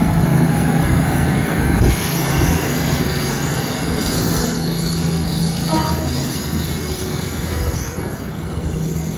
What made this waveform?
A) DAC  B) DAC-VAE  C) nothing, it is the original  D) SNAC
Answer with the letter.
D